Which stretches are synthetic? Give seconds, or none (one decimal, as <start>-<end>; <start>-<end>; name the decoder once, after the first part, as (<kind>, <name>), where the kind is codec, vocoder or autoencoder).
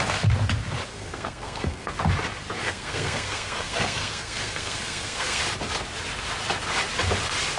0.9-1.9 (codec, SNAC); 2.6-5.4